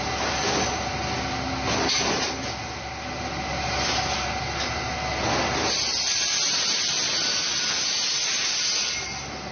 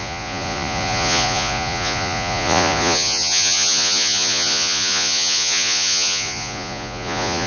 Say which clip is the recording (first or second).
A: first